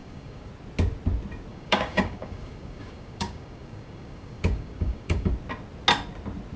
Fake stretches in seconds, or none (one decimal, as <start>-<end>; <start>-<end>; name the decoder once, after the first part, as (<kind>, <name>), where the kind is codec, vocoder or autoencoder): 0.0-0.5 (codec, DAC); 1.5-5.3